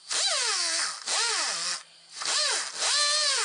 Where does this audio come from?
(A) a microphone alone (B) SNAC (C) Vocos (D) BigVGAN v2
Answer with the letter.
A